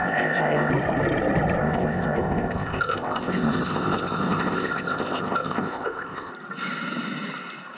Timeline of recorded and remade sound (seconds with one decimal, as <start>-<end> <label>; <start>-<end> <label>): 0.0-0.7 remade; 0.7-1.6 recorded; 1.6-6.3 remade; 6.3-7.8 recorded